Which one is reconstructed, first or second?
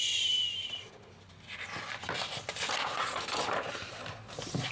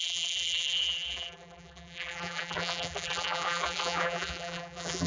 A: second